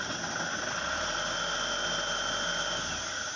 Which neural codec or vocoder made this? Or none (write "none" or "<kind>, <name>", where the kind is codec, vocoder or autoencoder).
none